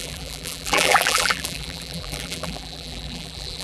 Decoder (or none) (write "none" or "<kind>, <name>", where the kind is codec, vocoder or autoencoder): vocoder, BigVGAN v2